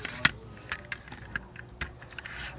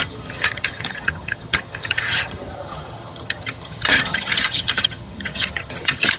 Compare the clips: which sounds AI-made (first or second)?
second